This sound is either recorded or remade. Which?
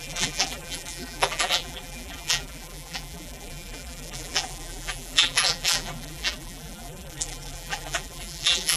remade